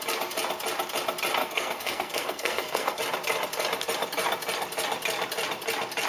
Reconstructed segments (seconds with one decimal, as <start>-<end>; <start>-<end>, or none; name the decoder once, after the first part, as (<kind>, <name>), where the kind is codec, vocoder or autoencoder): 1.4-3.0 (codec, SNAC)